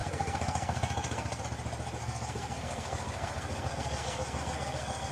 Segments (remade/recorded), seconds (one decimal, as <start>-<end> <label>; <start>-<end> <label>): 0.0-1.4 remade; 1.4-2.0 recorded; 2.0-5.1 remade